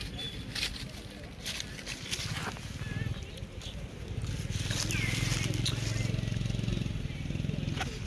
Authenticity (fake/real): real